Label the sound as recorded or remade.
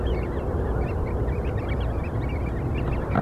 recorded